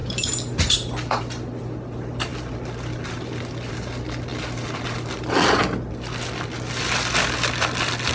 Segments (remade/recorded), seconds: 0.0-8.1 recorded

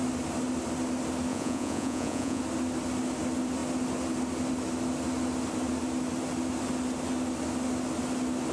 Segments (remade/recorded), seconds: 0.0-1.3 recorded; 1.3-2.4 remade; 2.4-8.5 recorded

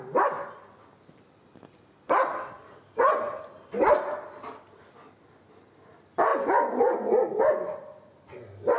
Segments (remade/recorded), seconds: 0.0-8.8 recorded

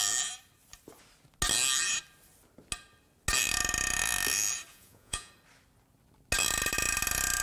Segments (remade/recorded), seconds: 0.0-4.7 recorded; 4.7-5.3 remade; 5.3-7.4 recorded

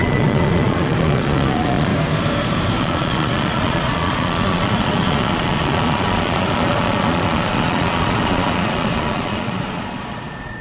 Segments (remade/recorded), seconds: 0.0-1.9 remade; 1.9-2.8 recorded; 2.8-10.6 remade

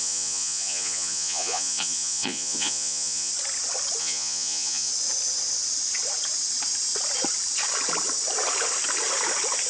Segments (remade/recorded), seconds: 0.0-3.3 remade; 3.3-4.0 recorded; 4.0-4.9 remade; 4.9-9.7 recorded

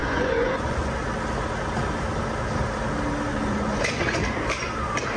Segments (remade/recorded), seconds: 0.0-0.9 remade; 0.9-3.3 recorded; 3.3-4.2 remade; 4.2-5.2 recorded